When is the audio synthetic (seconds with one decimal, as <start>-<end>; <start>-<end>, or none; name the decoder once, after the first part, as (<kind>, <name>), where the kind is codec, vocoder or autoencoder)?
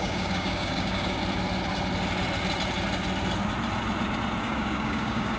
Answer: 0.0-1.2 (codec, DAC); 4.4-5.4